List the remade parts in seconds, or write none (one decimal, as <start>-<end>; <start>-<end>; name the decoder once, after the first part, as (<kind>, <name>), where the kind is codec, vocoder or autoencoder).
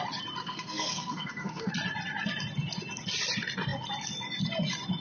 0.4-1.7 (codec, SNAC)